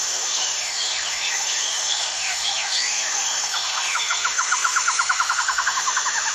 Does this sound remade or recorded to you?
remade